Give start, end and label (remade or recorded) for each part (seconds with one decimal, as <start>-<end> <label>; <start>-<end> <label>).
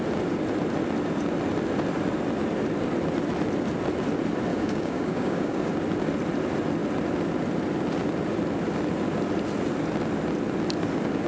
0.0-4.5 recorded; 4.5-5.7 remade; 5.7-11.3 recorded